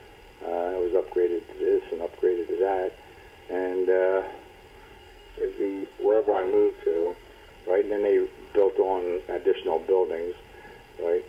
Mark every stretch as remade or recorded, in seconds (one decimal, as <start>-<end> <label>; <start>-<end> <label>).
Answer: 0.0-4.8 recorded; 4.8-7.5 remade; 7.5-11.3 recorded